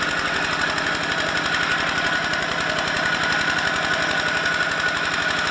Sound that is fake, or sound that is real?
real